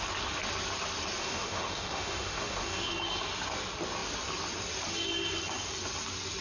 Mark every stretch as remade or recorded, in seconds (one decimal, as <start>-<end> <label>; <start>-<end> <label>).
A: 0.0-1.2 recorded; 1.2-2.9 remade; 2.9-6.4 recorded